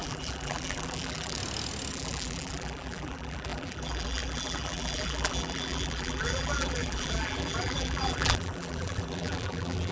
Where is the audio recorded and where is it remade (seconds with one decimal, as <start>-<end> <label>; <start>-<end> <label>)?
0.0-1.4 remade; 1.4-1.9 recorded; 1.9-9.9 remade

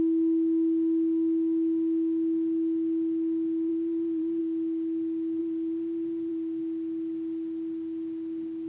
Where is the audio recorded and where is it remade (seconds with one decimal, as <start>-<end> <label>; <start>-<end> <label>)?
0.0-3.7 recorded; 3.7-4.4 remade; 4.4-5.4 recorded; 5.4-6.3 remade; 6.3-8.7 recorded

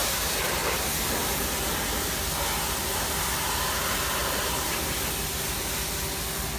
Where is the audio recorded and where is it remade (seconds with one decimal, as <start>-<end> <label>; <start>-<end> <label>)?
0.0-4.2 recorded; 4.2-4.9 remade; 4.9-6.6 recorded

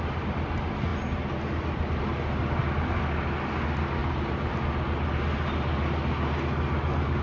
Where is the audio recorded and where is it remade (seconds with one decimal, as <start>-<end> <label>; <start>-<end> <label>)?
0.0-4.0 recorded; 4.0-4.5 remade; 4.5-7.2 recorded

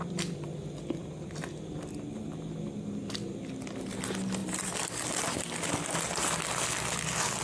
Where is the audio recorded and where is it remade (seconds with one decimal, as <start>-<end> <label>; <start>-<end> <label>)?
0.0-4.4 recorded; 4.4-6.2 remade; 6.2-7.4 recorded